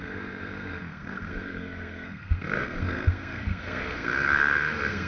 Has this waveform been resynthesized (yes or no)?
yes